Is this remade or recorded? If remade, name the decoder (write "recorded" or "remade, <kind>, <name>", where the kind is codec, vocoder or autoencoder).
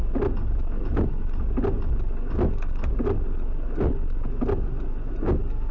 recorded